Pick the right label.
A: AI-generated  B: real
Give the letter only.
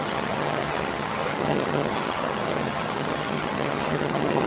A